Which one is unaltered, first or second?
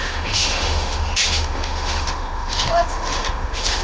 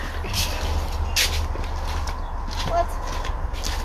second